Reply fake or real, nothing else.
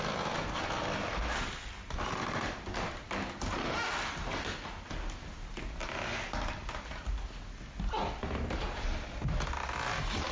real